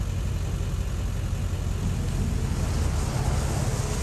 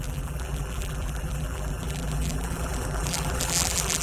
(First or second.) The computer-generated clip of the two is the second